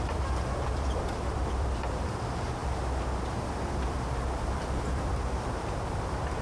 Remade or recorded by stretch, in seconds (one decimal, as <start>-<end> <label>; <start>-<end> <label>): 0.0-2.6 remade; 2.6-4.2 recorded; 4.2-6.4 remade